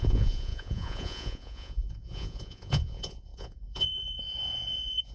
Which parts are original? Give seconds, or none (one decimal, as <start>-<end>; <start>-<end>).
none

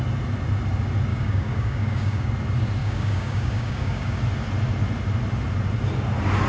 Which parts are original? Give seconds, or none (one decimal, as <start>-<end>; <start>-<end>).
0.0-1.1; 2.3-2.8; 4.2-6.5

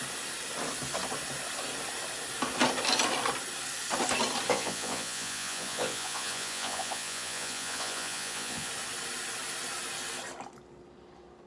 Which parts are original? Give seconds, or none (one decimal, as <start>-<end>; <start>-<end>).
0.0-4.5; 8.7-11.5

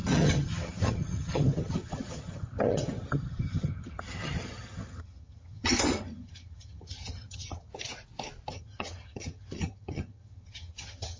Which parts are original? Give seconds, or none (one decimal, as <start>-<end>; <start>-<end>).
7.7-8.5

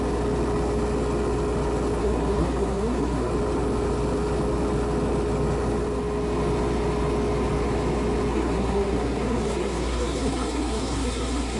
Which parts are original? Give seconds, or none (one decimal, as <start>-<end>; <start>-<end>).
0.0-2.0; 3.3-8.3

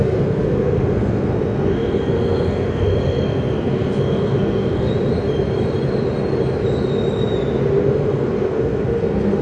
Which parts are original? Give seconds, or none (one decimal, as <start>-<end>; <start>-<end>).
4.9-7.8

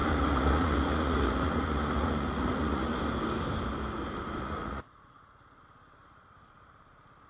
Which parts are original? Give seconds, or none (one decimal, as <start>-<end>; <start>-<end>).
3.0-4.4; 5.6-7.3